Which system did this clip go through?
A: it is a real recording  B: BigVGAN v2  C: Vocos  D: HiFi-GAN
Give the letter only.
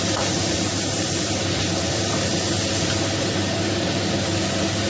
B